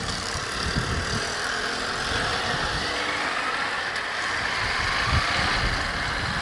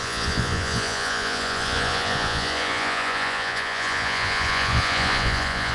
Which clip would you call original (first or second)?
first